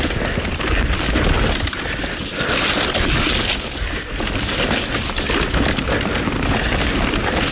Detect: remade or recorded recorded